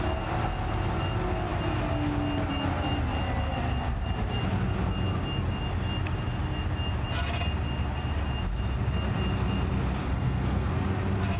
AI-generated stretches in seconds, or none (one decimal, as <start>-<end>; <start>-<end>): 10.0-10.7